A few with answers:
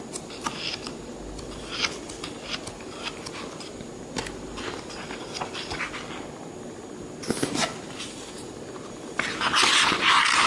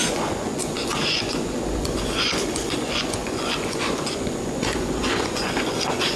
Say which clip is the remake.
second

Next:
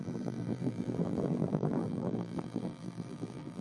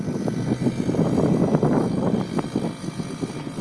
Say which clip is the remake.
first